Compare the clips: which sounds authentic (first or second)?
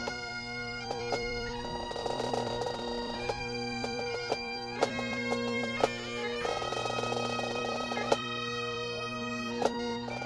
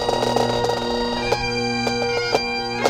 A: second